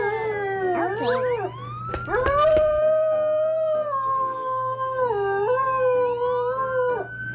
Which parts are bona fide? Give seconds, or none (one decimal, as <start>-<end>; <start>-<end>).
0.0-4.1; 5.1-7.3